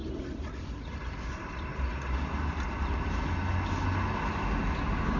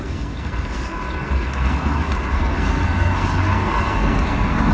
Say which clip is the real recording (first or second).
first